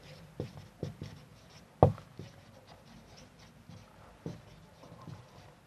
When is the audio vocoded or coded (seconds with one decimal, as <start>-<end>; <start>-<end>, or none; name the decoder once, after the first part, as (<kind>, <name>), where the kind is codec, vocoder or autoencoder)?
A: none